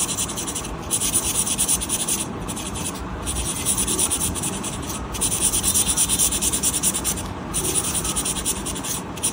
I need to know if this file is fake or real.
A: fake